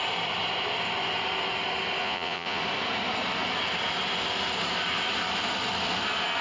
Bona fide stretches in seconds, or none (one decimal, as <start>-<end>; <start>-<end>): 0.0-2.0; 2.6-6.4